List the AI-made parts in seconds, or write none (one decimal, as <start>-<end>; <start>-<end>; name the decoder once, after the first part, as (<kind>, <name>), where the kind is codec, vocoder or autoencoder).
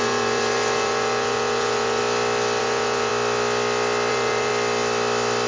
0.0-2.0 (vocoder, Vocos); 2.6-3.1; 4.1-4.5